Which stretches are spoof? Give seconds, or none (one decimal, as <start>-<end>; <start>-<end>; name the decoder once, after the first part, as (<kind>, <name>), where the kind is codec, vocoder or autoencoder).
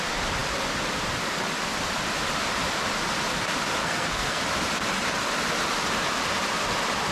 3.8-4.4 (codec, SNAC)